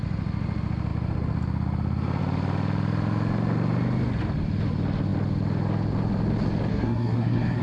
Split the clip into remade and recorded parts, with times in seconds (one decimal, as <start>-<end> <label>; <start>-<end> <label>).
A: 0.0-6.7 recorded; 6.7-7.6 remade